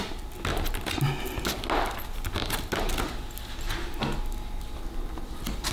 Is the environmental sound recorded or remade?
recorded